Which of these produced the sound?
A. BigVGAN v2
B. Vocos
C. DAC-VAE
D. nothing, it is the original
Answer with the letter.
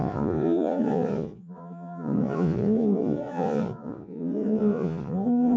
B